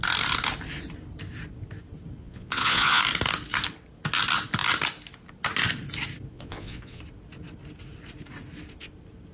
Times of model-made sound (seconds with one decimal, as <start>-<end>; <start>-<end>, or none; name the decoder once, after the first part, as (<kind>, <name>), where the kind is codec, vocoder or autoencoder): 2.2-3.0 (vocoder, Vocos); 6.3-7.0